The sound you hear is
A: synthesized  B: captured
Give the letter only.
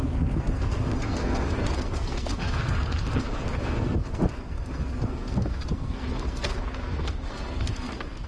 A